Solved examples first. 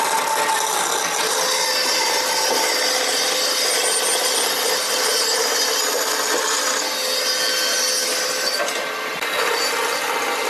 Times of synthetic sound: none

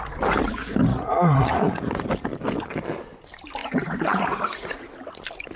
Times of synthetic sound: 0.9-2.0 (vocoder, Vocos); 3.6-4.9

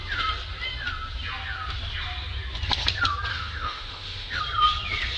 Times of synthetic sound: 3.3-4.4 (autoencoder, DAC-VAE)

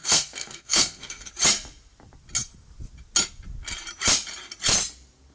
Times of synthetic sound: 0.0-1.3 (codec, SNAC)

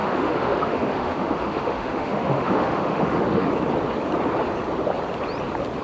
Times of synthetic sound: 0.0-3.5 (autoencoder, DAC-VAE)